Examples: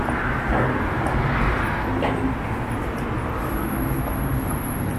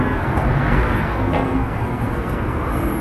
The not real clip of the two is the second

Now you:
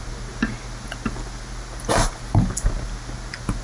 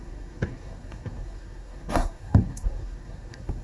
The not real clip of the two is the second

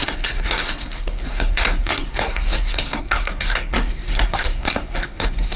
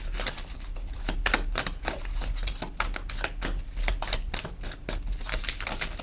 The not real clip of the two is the first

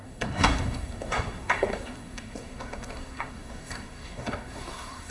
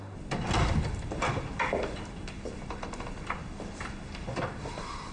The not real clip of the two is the first